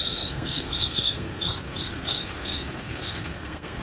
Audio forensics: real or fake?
fake